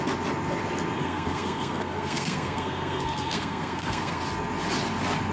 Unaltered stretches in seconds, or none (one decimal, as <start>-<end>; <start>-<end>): 0.0-1.0; 4.2-5.3